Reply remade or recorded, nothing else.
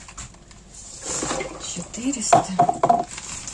recorded